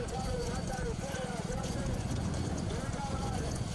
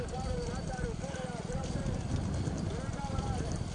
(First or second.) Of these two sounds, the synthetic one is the first